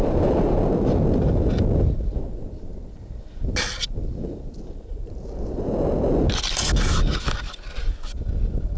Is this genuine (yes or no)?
yes